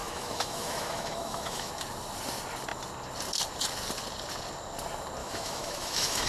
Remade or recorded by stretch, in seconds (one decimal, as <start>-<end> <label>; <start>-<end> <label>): 0.0-1.7 remade; 1.7-5.2 recorded; 5.2-6.3 remade